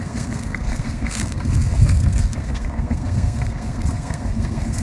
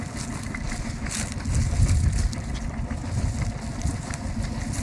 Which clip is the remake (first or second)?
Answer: first